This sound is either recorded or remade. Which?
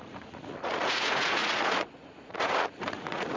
remade